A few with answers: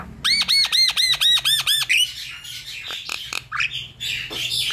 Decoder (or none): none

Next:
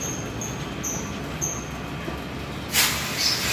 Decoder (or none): none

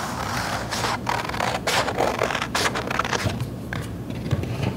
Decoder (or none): vocoder, BigVGAN v2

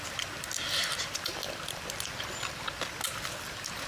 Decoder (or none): none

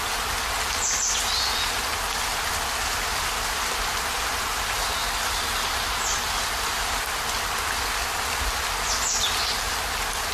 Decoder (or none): none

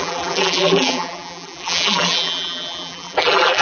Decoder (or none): vocoder, BigVGAN v2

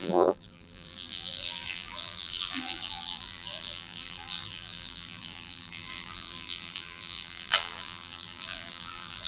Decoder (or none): vocoder, BigVGAN v2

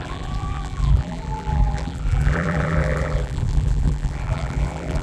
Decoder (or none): vocoder, BigVGAN v2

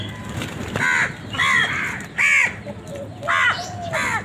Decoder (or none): none